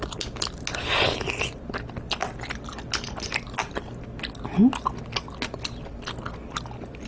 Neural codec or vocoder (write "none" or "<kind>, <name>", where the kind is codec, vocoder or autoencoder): none